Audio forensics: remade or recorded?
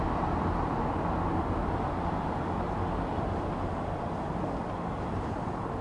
recorded